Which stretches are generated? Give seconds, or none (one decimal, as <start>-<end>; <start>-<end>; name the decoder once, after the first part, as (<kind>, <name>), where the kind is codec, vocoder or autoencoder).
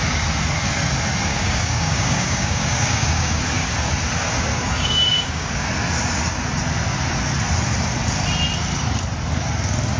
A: 1.3-3.4 (codec, DAC); 4.5-5.5